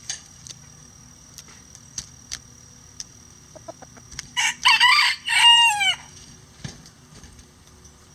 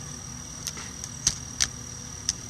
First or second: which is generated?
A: first